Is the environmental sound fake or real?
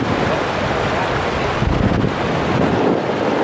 real